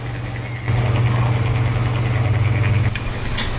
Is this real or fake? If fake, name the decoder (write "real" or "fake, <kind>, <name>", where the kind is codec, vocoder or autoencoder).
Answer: real